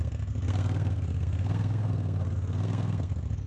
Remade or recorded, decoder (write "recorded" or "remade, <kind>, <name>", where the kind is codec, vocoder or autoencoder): remade, codec, SNAC